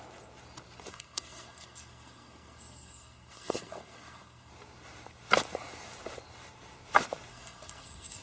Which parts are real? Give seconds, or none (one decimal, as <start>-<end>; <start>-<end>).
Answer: 0.0-0.9; 4.5-7.3